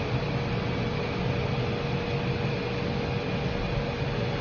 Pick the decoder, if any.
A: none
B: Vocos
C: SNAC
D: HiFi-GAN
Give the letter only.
A